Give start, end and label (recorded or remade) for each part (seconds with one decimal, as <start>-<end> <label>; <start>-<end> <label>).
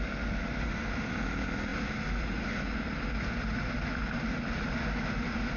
0.0-5.6 recorded